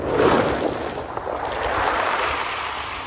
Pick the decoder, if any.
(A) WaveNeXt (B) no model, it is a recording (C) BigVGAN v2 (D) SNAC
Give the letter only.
B